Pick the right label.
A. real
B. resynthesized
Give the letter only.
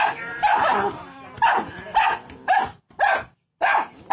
A